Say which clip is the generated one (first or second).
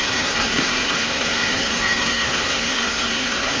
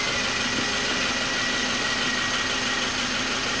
first